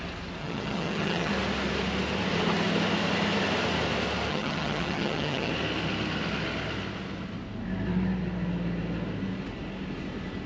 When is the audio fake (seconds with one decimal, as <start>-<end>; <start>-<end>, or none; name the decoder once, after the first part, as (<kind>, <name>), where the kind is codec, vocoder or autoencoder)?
0.4-1.3 (vocoder, HiFi-GAN); 4.3-5.5